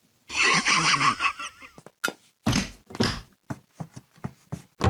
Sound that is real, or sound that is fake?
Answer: real